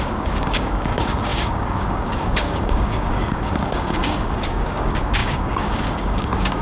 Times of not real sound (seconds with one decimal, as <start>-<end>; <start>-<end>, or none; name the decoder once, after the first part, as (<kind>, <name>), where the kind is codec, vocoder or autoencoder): 0.0-6.6 (codec, DAC)